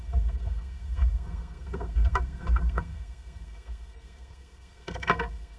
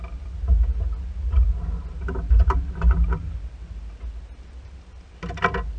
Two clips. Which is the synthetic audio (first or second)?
first